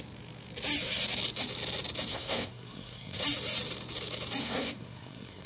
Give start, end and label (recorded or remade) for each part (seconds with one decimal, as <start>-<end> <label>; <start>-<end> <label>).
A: 0.0-2.1 recorded; 2.1-3.2 remade; 3.2-4.4 recorded; 4.4-5.5 remade